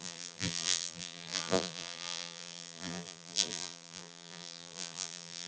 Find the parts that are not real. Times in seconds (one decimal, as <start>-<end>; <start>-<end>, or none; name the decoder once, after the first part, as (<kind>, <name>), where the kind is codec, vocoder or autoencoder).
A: 0.0-5.5 (vocoder, BigVGAN v2)